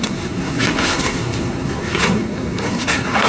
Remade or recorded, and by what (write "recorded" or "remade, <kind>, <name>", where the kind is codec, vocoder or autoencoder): remade, codec, SNAC